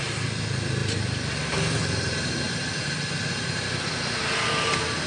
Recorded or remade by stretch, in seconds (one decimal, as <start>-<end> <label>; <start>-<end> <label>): 0.0-5.1 recorded